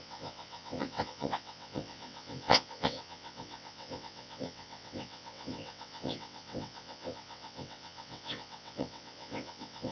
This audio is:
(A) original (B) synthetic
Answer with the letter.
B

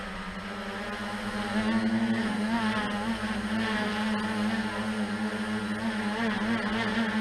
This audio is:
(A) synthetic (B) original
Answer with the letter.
B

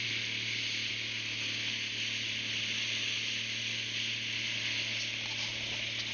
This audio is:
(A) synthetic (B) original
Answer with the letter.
B